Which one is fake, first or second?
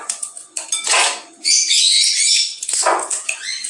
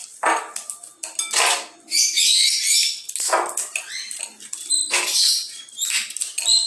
first